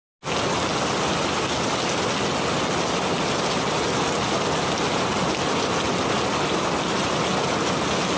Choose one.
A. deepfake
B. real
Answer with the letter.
B